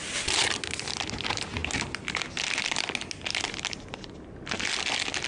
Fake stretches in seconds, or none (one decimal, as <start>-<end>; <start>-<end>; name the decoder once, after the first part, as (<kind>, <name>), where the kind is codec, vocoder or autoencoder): none